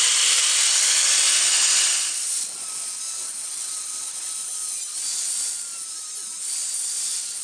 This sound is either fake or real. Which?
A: real